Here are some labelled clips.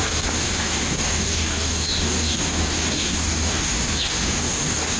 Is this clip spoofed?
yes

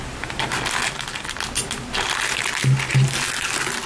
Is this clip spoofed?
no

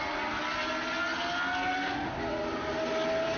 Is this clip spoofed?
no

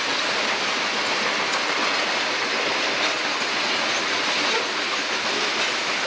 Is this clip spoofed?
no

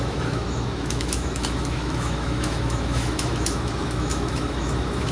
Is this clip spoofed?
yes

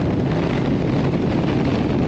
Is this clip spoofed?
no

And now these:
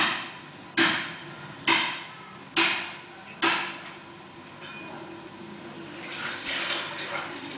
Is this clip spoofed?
no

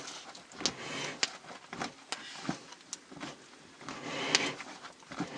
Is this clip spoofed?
no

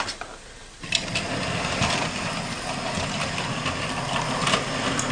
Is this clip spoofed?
no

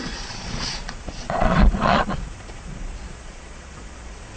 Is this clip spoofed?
yes